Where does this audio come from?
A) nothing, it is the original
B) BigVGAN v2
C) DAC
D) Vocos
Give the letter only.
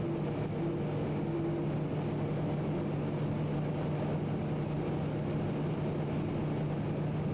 A